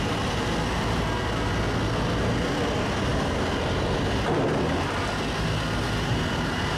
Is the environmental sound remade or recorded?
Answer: recorded